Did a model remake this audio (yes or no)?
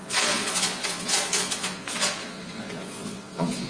yes